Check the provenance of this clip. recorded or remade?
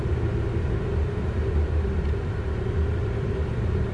remade